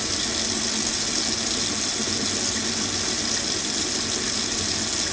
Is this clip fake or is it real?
real